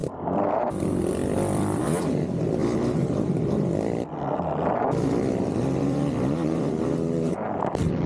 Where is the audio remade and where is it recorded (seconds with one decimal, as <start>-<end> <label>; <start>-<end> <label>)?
0.0-8.1 remade